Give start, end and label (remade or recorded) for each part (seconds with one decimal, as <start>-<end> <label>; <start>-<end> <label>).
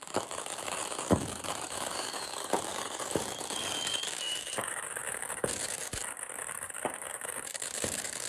0.0-8.3 remade